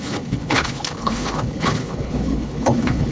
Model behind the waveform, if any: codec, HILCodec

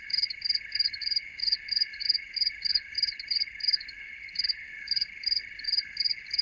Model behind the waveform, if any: codec, HILCodec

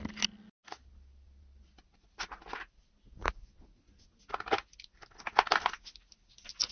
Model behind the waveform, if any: none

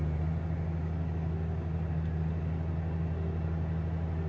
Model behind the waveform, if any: none